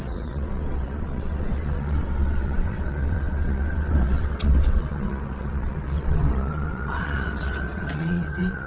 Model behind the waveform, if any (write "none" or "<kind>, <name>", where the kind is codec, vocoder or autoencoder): vocoder, WaveNeXt